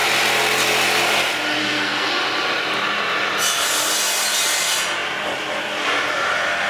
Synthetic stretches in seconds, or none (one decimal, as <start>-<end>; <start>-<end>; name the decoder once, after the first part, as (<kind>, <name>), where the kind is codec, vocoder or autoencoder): 1.6-2.2 (codec, SNAC)